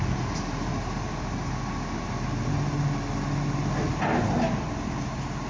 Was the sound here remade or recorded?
recorded